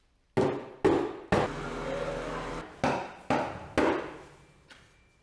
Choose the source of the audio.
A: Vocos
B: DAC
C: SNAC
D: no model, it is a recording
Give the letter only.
D